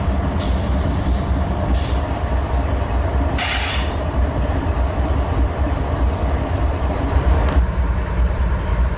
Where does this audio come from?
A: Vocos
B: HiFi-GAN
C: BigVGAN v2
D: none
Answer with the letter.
C